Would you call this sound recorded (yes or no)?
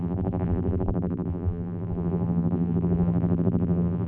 no